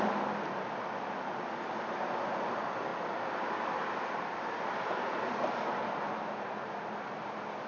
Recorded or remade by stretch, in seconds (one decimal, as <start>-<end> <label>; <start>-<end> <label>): 0.0-7.7 recorded